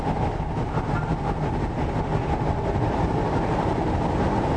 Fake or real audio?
real